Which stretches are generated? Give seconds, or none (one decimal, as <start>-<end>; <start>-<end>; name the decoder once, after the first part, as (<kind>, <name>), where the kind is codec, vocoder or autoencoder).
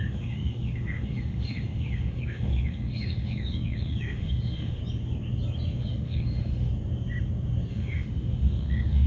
0.0-4.8 (autoencoder, DAC-VAE); 5.8-6.7; 7.7-9.1